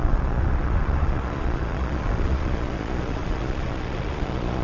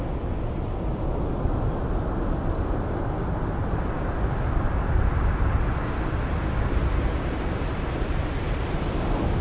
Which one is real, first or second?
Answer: second